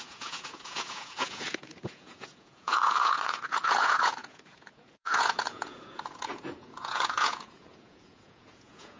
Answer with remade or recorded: remade